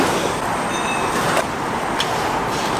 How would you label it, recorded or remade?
recorded